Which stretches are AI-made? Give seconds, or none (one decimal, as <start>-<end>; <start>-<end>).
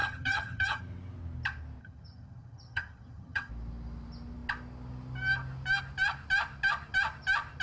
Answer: 0.0-0.8; 1.8-3.5